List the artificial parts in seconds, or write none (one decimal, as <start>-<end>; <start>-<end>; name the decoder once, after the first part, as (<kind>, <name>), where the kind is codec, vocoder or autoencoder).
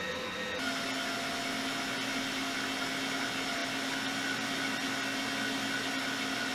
none